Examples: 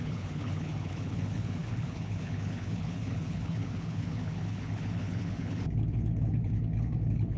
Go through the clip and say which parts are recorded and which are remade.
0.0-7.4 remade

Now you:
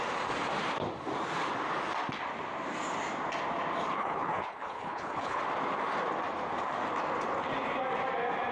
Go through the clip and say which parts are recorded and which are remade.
0.0-3.9 recorded; 3.9-5.4 remade; 5.4-8.5 recorded

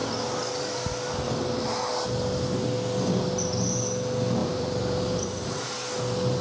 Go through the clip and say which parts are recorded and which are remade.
0.0-4.4 recorded; 4.4-5.6 remade; 5.6-6.4 recorded

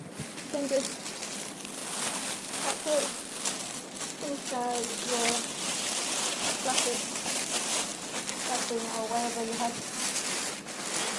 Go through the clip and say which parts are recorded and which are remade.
0.0-7.9 remade; 7.9-11.2 recorded

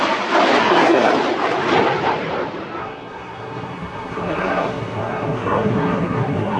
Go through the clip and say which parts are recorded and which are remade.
0.0-0.6 recorded; 0.6-1.1 remade; 1.1-2.8 recorded; 2.8-6.6 remade

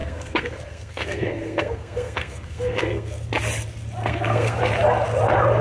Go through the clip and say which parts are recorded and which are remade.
0.0-3.3 remade; 3.3-4.0 recorded; 4.0-4.6 remade; 4.6-5.6 recorded

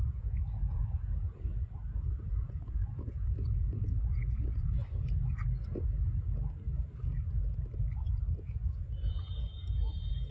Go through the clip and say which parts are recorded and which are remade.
0.0-1.3 remade; 1.3-2.3 recorded; 2.3-4.8 remade; 4.8-8.4 recorded; 8.4-10.3 remade

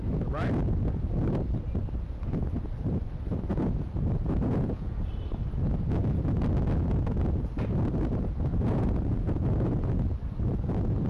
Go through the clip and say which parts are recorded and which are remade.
0.0-3.5 recorded; 3.5-4.9 remade; 4.9-8.5 recorded; 8.5-10.0 remade; 10.0-11.1 recorded